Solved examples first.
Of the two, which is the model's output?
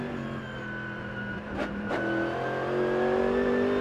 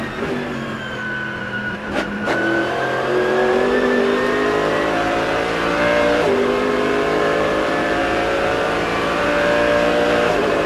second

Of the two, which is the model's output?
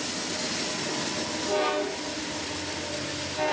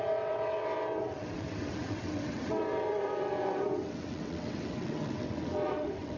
second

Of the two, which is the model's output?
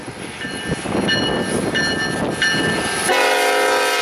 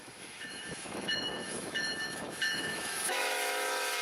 second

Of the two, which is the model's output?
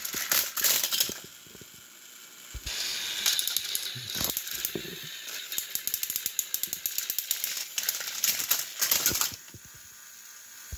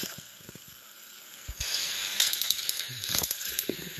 second